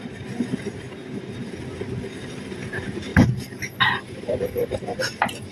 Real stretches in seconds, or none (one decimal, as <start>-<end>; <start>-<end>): 0.0-3.1; 3.9-5.5